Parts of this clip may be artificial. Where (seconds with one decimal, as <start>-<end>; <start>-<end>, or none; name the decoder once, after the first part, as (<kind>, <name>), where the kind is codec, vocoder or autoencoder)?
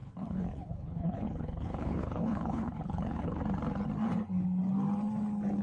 0.0-3.4 (codec, HILCodec)